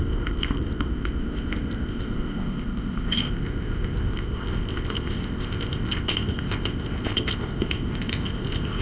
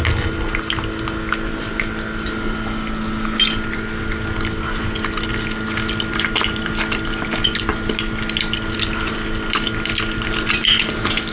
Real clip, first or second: second